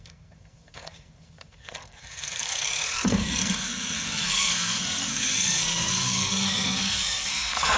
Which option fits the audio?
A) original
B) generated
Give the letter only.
B